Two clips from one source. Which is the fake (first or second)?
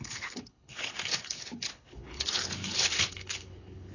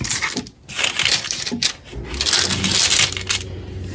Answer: first